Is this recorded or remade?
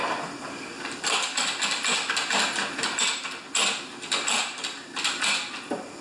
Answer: recorded